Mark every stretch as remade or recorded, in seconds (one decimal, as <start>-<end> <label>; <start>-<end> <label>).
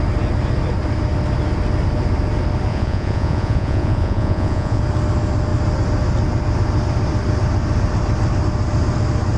0.0-2.7 recorded; 2.7-4.8 remade; 4.8-9.4 recorded